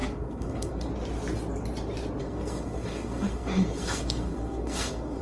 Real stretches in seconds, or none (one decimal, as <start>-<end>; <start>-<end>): 0.9-2.2